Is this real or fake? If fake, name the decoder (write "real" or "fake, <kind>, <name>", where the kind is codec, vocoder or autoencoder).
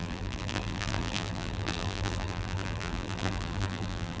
fake, vocoder, BigVGAN v2